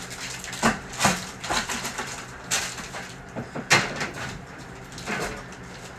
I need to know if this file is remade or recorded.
remade